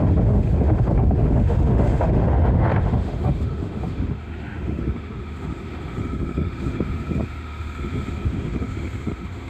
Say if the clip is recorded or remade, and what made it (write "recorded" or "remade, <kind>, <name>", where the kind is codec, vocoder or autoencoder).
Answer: remade, autoencoder, DAC-VAE